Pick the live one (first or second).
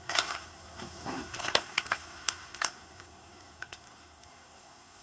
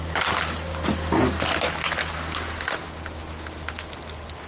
second